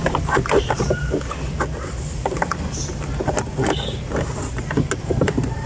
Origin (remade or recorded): recorded